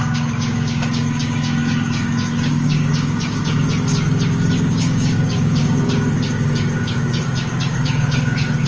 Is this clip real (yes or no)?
no